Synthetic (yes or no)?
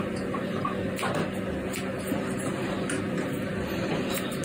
no